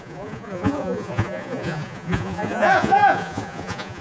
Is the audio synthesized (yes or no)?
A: yes